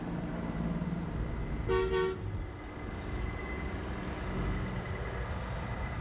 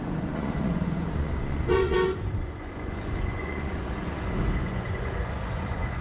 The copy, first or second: second